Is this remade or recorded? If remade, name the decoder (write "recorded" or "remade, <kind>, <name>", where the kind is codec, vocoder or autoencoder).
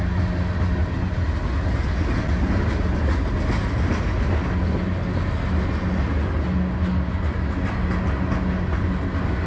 recorded